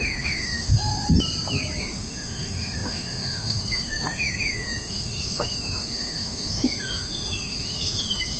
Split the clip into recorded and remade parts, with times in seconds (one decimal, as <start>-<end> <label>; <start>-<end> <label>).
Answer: 0.0-0.9 remade; 0.9-1.8 recorded; 1.8-8.4 remade